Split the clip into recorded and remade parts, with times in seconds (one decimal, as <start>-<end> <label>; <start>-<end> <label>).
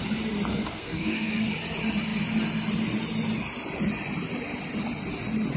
0.0-0.5 recorded; 0.5-1.3 remade; 1.3-5.6 recorded